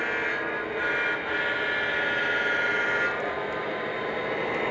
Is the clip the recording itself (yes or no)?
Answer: yes